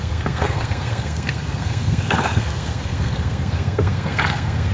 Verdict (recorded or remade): remade